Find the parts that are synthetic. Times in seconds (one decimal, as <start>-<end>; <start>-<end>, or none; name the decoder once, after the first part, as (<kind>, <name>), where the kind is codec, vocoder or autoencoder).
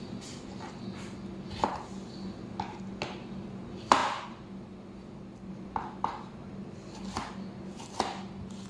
none